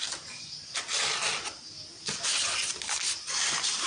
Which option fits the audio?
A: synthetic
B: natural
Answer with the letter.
B